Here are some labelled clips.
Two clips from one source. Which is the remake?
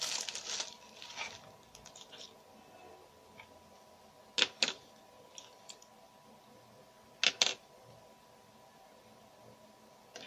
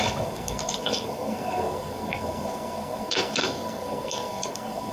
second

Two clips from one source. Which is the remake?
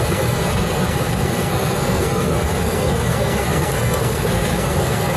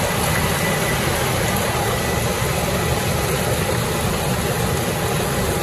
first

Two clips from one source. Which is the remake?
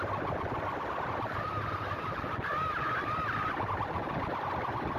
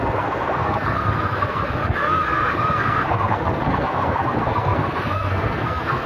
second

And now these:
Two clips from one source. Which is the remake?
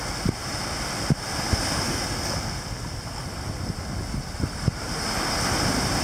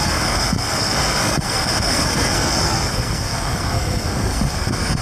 second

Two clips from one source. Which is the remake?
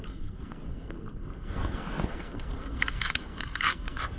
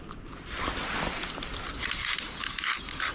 first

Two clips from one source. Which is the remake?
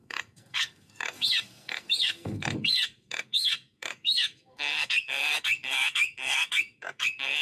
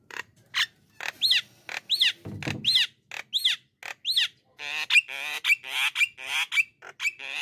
first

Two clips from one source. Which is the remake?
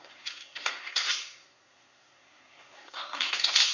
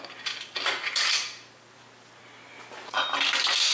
first